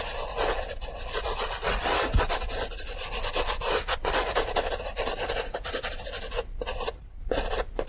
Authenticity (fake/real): real